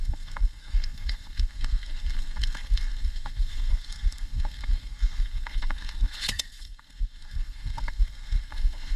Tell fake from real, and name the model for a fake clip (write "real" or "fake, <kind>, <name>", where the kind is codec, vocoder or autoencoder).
fake, codec, SNAC